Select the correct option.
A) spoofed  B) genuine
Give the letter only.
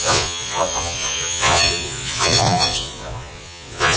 A